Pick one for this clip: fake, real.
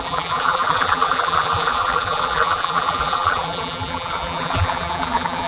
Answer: fake